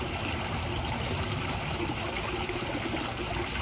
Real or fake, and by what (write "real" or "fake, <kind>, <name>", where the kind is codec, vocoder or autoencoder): real